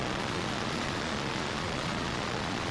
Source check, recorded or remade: remade